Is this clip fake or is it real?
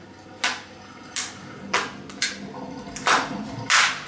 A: real